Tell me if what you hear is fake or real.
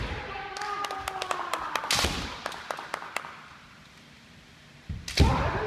real